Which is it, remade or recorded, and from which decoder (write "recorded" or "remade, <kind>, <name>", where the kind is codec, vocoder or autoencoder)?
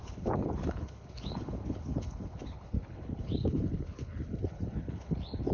remade, codec, HILCodec